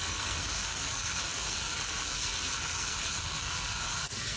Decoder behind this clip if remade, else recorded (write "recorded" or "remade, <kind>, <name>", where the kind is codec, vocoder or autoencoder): remade, codec, SNAC